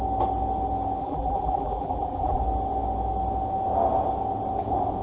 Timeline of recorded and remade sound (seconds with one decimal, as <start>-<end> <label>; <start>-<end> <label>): 0.0-1.0 recorded; 1.0-2.4 remade; 2.4-5.0 recorded